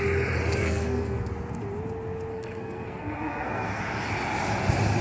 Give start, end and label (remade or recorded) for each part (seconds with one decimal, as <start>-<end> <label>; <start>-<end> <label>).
0.0-0.6 recorded; 0.6-1.3 remade; 1.3-2.3 recorded; 2.3-3.8 remade; 3.8-5.0 recorded